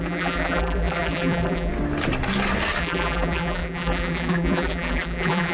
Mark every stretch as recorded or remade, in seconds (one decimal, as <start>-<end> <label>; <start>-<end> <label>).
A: 0.0-1.7 remade; 1.7-2.8 recorded; 2.8-5.5 remade